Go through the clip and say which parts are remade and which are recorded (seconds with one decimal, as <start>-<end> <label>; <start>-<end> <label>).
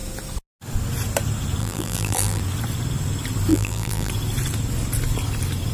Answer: 0.0-1.6 recorded; 1.6-2.4 remade; 2.4-3.5 recorded; 3.5-4.1 remade; 4.1-5.7 recorded